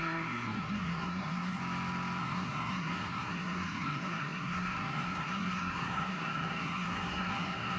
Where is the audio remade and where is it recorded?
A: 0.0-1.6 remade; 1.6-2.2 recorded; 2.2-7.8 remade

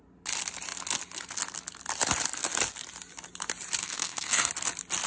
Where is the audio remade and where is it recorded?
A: 0.0-3.8 recorded; 3.8-4.5 remade; 4.5-5.1 recorded

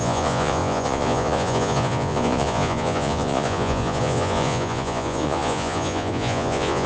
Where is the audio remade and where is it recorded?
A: 0.0-6.9 remade

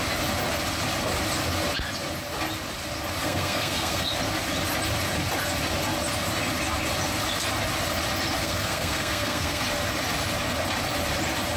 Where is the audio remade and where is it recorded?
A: 0.0-3.2 recorded; 3.2-4.1 remade; 4.1-8.4 recorded; 8.4-9.6 remade; 9.6-11.6 recorded

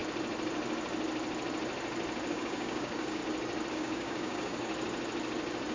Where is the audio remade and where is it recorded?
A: 0.0-2.3 recorded; 2.3-3.2 remade; 3.2-3.7 recorded; 3.7-4.7 remade; 4.7-5.7 recorded

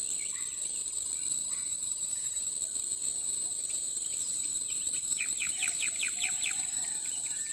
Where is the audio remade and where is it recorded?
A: 0.0-1.4 recorded; 1.4-2.5 remade; 2.5-3.2 recorded; 3.2-7.5 remade